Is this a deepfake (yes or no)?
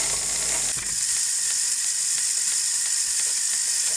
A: no